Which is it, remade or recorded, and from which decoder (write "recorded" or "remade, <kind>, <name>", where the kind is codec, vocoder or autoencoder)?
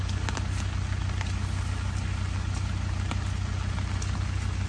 recorded